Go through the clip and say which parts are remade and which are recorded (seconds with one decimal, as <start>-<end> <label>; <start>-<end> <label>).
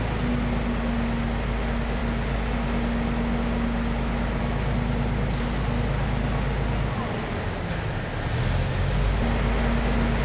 0.0-10.2 recorded